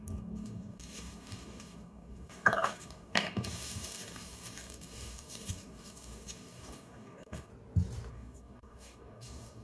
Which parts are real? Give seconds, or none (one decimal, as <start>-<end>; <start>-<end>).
7.5-8.1